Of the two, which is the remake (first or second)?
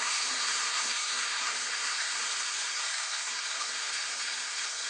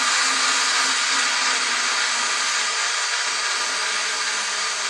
first